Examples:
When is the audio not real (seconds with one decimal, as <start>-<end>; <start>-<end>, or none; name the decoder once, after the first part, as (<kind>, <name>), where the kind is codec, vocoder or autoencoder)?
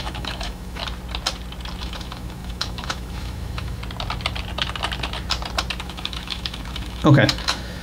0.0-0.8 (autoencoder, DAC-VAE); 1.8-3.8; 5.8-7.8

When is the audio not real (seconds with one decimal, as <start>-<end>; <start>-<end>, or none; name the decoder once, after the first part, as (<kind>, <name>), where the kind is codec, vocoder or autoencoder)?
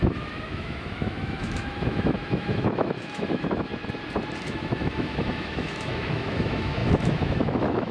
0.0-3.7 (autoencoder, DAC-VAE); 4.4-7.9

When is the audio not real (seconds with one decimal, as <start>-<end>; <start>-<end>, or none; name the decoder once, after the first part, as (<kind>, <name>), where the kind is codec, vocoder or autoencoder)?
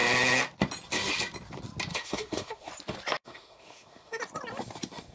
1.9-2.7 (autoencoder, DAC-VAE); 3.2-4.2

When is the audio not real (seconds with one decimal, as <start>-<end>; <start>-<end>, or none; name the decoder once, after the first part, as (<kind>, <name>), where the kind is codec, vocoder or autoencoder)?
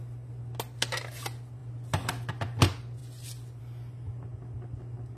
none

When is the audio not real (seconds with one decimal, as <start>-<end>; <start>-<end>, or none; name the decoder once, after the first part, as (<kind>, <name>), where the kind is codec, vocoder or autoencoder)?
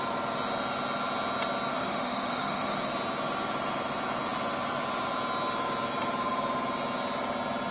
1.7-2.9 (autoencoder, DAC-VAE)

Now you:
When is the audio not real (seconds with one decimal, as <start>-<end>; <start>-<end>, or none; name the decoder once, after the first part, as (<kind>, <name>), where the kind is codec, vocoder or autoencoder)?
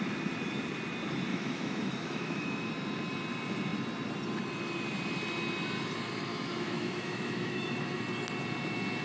1.3-2.7 (autoencoder, DAC-VAE); 6.3-8.0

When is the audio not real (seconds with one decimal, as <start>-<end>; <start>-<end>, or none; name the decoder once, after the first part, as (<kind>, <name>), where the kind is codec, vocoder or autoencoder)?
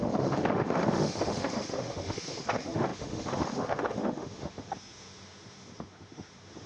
0.0-6.7 (autoencoder, DAC-VAE)